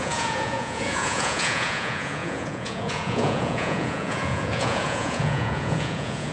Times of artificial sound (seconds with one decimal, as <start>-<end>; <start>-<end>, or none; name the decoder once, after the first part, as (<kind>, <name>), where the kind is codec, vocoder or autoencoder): 0.0-6.3 (vocoder, Vocos)